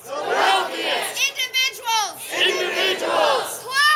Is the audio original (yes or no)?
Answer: yes